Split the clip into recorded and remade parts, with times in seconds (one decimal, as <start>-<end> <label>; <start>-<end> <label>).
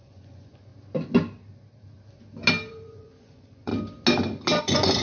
0.0-0.7 remade; 0.7-2.7 recorded; 2.7-3.7 remade; 3.7-4.6 recorded; 4.6-5.0 remade